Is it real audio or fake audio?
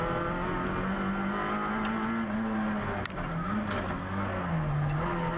real